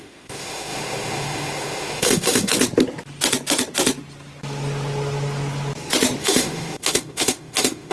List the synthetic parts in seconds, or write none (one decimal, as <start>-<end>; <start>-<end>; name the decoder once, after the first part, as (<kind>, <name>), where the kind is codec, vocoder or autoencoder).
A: 0.0-2.5 (autoencoder, DAC-VAE); 6.2-7.9